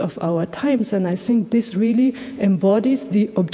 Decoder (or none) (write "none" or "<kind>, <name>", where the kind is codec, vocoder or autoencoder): vocoder, Vocos